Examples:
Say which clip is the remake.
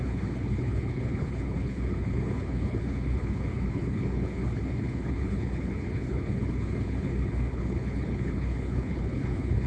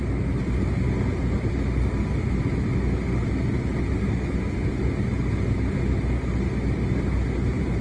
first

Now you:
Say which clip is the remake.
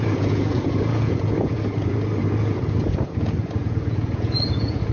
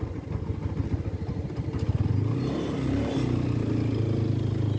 first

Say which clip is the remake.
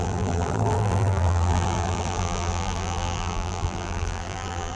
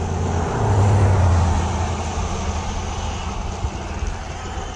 first